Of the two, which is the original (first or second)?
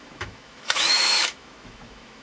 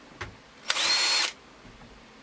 second